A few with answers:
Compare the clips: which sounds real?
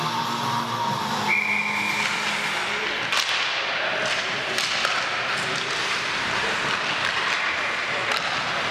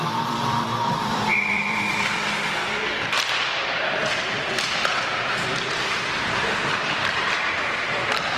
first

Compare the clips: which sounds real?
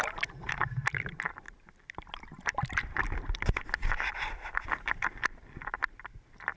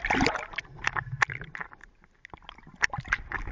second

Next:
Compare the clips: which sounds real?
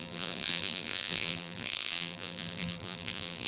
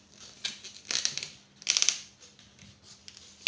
second